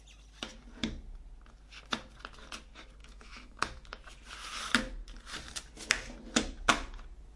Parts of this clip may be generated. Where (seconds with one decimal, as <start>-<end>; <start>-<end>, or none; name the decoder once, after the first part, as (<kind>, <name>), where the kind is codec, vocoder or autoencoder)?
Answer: 3.0-3.6 (autoencoder, DAC-VAE)